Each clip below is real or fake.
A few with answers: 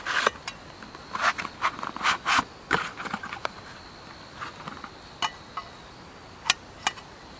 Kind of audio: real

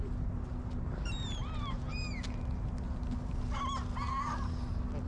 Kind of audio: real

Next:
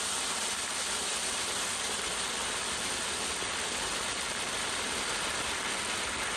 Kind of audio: real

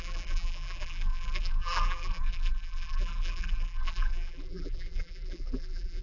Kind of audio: fake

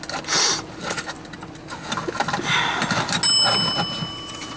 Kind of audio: real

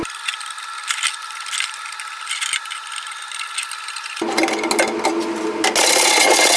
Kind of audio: real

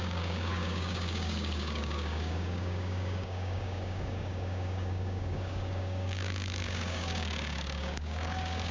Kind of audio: fake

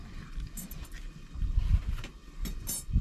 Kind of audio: real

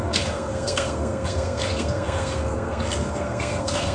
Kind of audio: fake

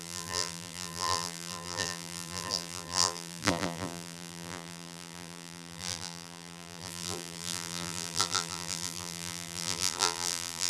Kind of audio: fake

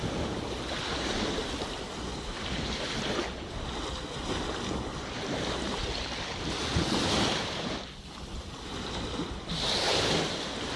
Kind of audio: real